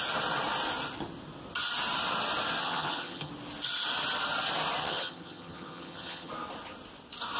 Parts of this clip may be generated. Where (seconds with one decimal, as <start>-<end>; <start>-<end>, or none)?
2.6-3.3; 4.8-6.3